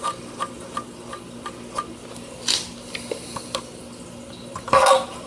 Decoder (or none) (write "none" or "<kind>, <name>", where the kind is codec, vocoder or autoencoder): none